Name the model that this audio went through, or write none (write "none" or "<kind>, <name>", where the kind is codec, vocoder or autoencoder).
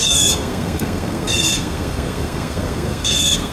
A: codec, SNAC